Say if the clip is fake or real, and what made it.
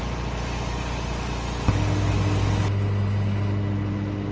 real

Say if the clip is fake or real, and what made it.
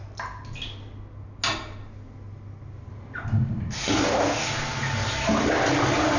real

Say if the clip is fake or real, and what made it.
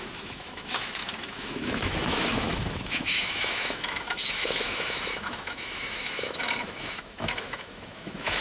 fake, autoencoder, DAC-VAE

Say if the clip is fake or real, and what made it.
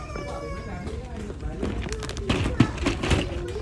real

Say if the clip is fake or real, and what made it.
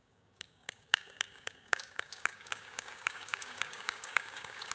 fake, codec, DAC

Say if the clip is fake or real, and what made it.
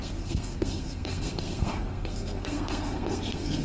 fake, codec, SNAC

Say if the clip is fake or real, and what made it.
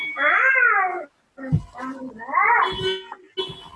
real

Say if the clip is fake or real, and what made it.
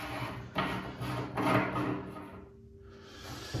real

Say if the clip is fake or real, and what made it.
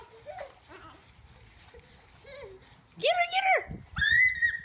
real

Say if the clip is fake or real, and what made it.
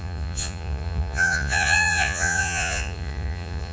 fake, vocoder, Vocos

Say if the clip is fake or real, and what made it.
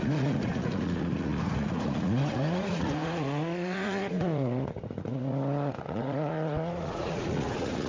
fake, vocoder, Vocos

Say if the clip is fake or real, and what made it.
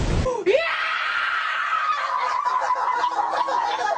real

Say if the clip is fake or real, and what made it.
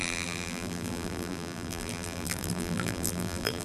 fake, vocoder, BigVGAN v2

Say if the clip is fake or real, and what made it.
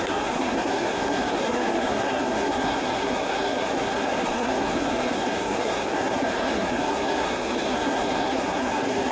fake, codec, SNAC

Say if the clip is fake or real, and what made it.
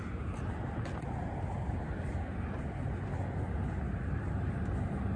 real